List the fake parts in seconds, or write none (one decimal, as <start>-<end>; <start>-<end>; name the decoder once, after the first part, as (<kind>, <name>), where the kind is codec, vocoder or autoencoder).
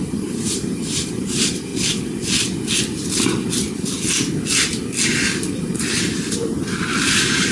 0.0-1.7 (vocoder, BigVGAN v2); 6.0-7.5